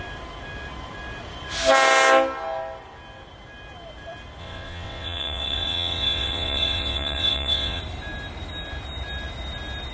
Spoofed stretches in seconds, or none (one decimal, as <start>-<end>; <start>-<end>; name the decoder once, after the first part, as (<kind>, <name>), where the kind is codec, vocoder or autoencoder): 4.4-7.8 (vocoder, WaveNeXt)